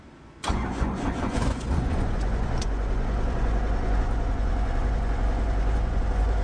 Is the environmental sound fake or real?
fake